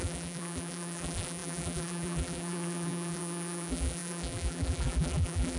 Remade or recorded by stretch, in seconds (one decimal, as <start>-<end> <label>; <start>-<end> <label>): 0.0-5.6 remade